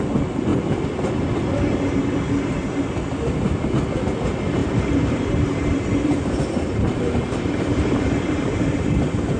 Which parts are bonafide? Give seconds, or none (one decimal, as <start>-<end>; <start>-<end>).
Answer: 0.0-4.6; 8.8-9.4